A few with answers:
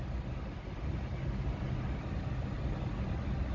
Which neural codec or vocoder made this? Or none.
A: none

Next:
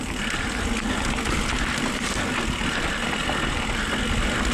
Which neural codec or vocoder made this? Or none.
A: none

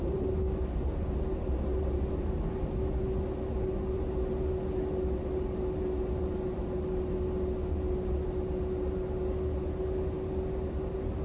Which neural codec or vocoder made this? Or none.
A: none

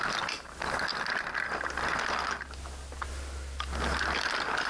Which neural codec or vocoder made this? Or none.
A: none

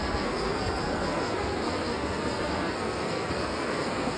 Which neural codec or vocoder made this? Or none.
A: codec, SNAC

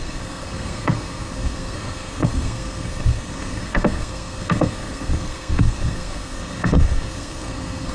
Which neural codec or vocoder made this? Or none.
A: codec, SNAC